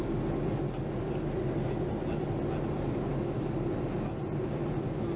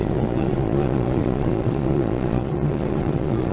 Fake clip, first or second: second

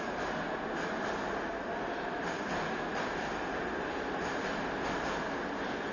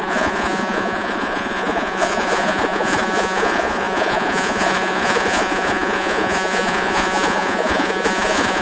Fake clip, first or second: second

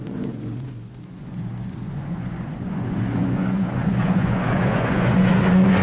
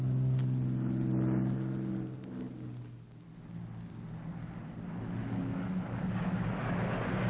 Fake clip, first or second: first